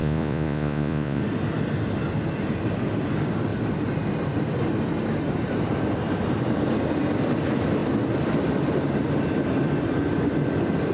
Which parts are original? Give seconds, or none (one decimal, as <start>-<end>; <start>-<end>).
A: 1.2-10.9